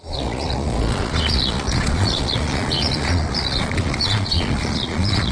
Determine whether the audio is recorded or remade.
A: remade